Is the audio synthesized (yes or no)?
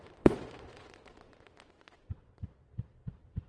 yes